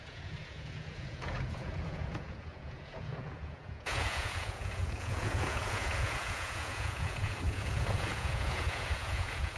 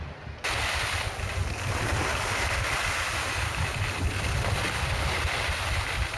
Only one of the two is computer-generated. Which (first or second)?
first